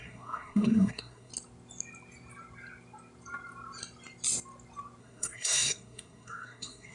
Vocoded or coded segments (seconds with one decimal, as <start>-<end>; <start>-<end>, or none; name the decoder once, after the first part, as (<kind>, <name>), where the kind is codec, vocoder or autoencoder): 0.0-1.3 (codec, SNAC); 5.0-6.9